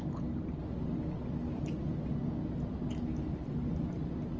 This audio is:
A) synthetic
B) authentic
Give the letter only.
B